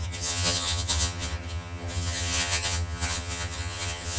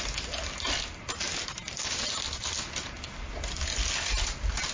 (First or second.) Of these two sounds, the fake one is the first